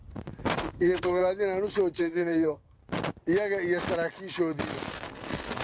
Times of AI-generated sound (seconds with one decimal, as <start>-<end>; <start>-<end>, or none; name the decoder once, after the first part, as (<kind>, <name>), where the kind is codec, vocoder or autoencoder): 0.6-1.2 (codec, SNAC); 2.0-2.8; 4.9-5.6

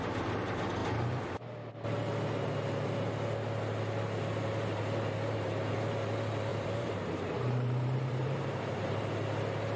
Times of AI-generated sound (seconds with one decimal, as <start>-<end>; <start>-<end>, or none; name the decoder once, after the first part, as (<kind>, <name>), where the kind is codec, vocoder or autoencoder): 6.5-9.0 (vocoder, BigVGAN v2)

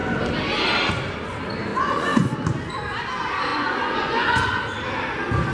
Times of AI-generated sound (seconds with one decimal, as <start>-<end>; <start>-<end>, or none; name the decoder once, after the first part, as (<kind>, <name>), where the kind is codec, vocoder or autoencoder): 1.7-2.3 (vocoder, Vocos); 3.5-4.6